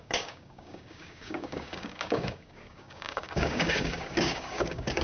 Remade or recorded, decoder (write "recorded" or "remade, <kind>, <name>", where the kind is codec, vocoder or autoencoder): remade, codec, DAC